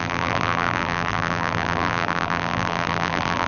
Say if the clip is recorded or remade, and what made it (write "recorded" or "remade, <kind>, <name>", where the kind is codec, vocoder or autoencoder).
remade, vocoder, BigVGAN v2